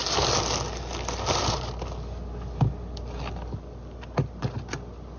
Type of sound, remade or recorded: recorded